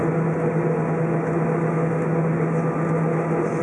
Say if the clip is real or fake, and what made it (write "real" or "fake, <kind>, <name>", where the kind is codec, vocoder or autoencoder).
real